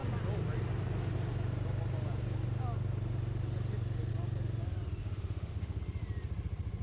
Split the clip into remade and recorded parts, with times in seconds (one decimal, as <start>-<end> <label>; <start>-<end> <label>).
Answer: 0.0-5.0 recorded; 5.0-5.8 remade; 5.8-6.8 recorded